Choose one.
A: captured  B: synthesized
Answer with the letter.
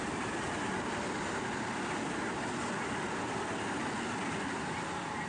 A